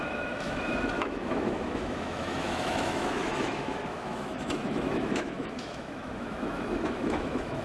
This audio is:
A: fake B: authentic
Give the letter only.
A